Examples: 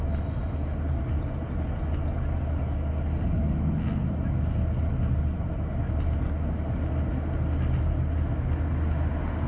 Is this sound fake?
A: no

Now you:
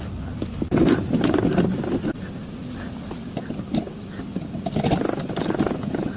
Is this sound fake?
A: no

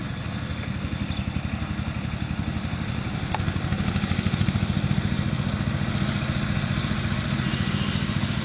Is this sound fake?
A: no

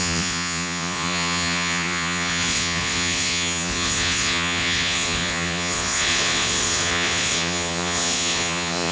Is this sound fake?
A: yes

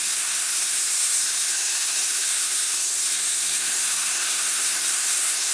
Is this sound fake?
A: yes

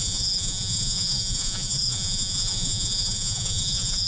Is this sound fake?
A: yes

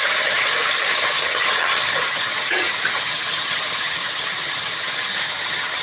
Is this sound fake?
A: yes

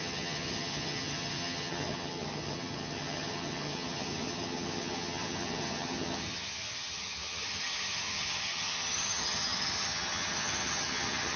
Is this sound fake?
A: yes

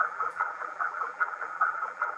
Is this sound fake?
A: yes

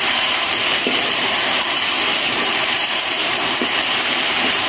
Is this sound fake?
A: yes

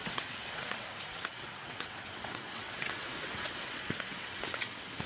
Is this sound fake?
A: yes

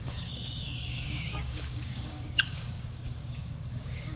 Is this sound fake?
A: yes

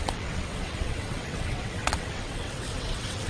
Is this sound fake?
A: yes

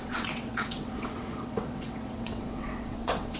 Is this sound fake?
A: yes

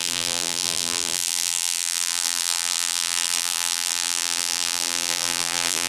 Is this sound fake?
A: yes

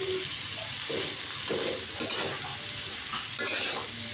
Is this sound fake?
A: no